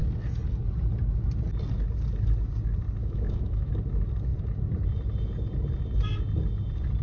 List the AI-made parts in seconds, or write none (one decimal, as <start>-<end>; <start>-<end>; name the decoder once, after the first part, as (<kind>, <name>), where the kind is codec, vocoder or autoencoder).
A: 3.0-3.7 (autoencoder, DAC-VAE)